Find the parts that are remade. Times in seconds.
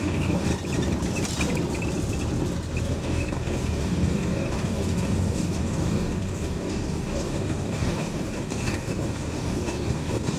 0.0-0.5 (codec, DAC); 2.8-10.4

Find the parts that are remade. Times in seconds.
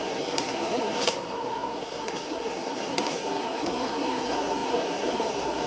0.0-5.7 (codec, SNAC)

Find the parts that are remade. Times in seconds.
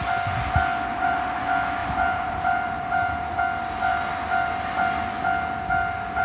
0.9-1.4 (vocoder, BigVGAN v2); 1.8-3.4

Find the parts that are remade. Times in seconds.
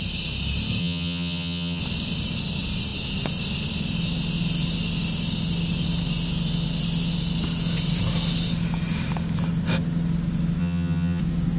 0.8-1.8 (vocoder, HiFi-GAN); 10.6-11.2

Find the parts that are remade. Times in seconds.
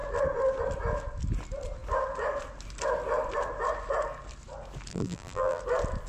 4.9-5.6 (vocoder, BigVGAN v2)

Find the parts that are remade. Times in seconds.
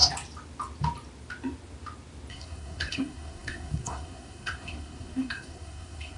2.3-6.2 (codec, SNAC)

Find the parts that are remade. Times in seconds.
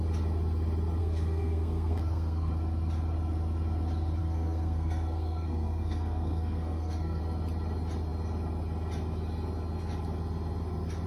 1.0-2.5 (codec, SNAC); 4.2-7.2